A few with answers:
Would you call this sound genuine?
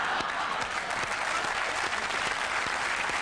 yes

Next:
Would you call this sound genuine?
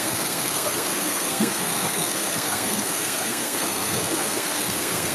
no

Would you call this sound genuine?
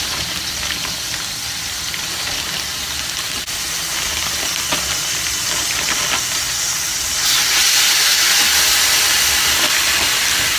yes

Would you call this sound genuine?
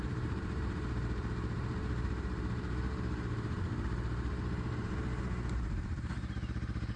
no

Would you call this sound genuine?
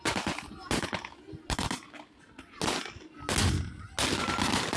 yes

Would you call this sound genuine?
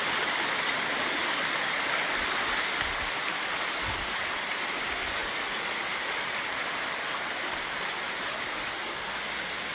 yes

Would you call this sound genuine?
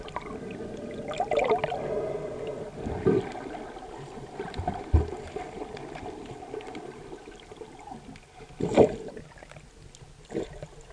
yes